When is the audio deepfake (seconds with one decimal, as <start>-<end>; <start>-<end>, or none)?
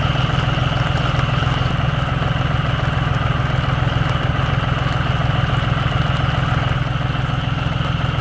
none